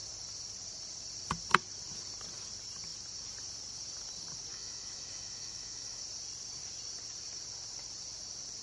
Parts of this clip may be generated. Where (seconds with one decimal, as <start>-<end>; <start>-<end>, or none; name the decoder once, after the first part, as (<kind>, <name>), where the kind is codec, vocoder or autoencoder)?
4.5-6.0 (autoencoder, DAC-VAE)